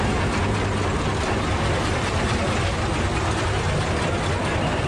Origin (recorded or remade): recorded